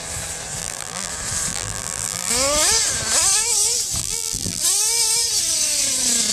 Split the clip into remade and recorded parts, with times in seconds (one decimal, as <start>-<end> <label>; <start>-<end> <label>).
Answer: 0.0-0.6 recorded; 0.6-1.1 remade; 1.1-1.5 recorded; 1.5-2.3 remade; 2.3-4.0 recorded; 4.0-4.6 remade; 4.6-6.3 recorded